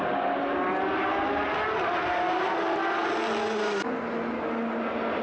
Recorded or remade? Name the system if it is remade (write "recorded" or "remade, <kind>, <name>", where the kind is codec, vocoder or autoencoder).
recorded